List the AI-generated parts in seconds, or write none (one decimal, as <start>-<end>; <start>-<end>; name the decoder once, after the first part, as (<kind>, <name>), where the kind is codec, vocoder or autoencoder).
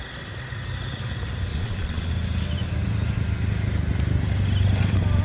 1.5-2.1 (vocoder, Vocos)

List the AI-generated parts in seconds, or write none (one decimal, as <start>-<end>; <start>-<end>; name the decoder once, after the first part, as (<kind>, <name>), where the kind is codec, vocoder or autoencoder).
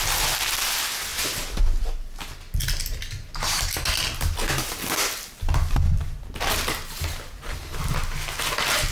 none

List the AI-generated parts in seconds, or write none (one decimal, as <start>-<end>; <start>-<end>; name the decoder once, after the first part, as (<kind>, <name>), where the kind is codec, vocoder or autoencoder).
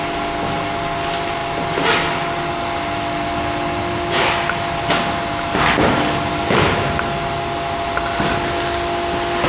none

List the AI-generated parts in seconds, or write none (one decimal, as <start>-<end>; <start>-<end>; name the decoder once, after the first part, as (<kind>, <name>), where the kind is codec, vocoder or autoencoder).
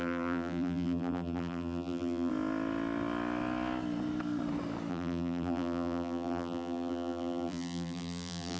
0.0-2.3 (vocoder, BigVGAN v2); 4.9-8.6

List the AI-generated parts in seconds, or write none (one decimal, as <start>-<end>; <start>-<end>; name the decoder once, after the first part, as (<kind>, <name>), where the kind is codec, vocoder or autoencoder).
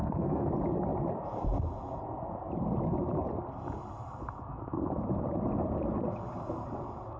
0.0-0.5 (codec, SNAC)